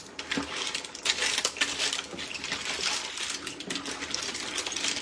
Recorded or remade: recorded